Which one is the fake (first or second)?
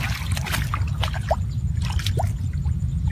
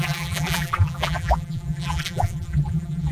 second